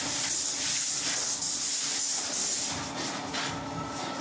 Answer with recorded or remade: recorded